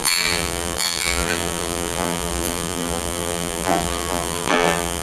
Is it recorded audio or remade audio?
remade